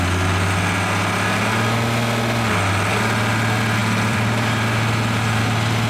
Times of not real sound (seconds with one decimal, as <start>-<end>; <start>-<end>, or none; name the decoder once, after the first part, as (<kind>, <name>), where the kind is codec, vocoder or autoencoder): 3.8-5.4 (vocoder, BigVGAN v2)